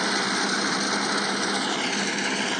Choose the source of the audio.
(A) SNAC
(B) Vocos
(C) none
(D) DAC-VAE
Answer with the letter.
C